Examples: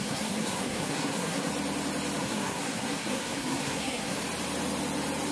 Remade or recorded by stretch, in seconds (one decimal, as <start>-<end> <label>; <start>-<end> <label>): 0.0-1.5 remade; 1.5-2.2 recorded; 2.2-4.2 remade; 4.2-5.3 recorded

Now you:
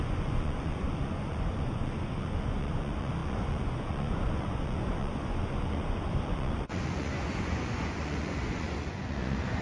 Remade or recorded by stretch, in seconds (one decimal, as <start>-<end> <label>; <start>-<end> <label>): 0.0-9.6 remade

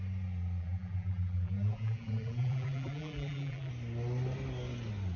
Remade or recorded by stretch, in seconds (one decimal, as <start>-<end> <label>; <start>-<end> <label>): 0.0-0.6 recorded; 0.6-3.7 remade; 3.7-5.2 recorded

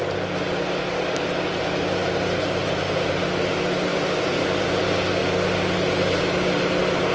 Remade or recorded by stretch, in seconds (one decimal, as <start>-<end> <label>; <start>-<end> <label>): 0.0-3.9 recorded; 3.9-4.8 remade; 4.8-7.1 recorded

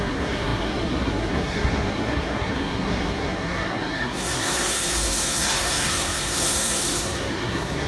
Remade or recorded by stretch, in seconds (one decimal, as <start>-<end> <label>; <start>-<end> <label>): 0.0-7.9 remade